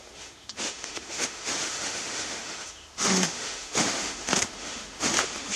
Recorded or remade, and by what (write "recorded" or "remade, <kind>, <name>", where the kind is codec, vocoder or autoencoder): remade, autoencoder, DAC-VAE